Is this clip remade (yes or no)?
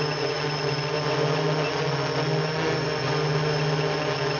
no